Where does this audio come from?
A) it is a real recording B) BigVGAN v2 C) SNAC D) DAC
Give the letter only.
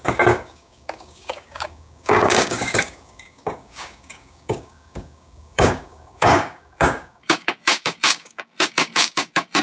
D